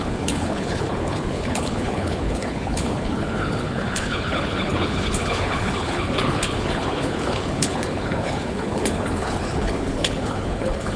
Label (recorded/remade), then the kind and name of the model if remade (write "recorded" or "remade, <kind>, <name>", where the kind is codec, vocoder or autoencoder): remade, codec, HILCodec